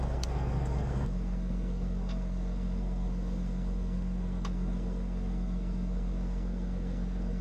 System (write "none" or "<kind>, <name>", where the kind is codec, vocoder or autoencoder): codec, SNAC